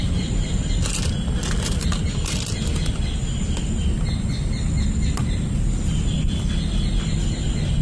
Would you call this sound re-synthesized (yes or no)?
no